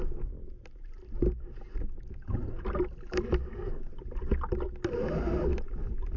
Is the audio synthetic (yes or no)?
no